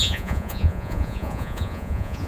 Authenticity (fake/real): fake